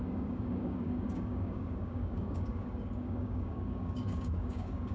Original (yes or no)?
no